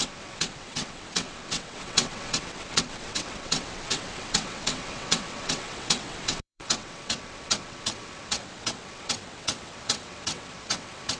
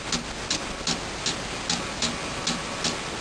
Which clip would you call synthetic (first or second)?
first